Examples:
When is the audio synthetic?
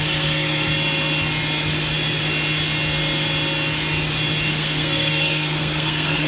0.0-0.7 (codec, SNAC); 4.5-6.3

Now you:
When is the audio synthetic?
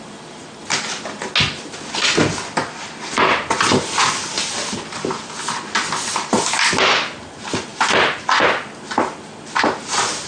none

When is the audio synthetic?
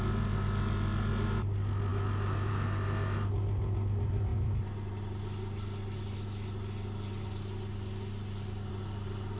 none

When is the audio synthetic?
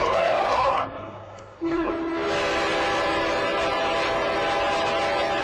0.0-1.9 (codec, SNAC)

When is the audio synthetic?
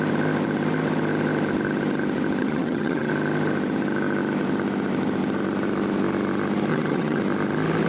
2.4-3.1 (vocoder, HiFi-GAN); 6.7-7.2